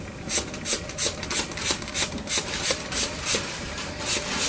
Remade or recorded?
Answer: recorded